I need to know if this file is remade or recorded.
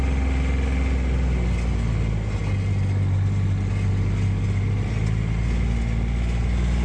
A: recorded